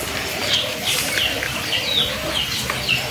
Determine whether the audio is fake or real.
real